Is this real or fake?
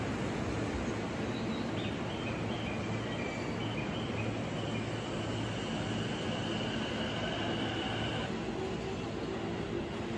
real